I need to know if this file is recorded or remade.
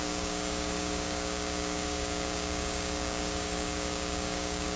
remade